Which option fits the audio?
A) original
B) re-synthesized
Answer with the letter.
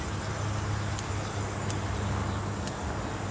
A